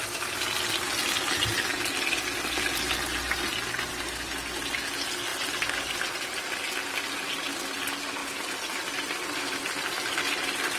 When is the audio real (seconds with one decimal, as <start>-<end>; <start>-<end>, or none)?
0.0-8.2; 10.2-10.8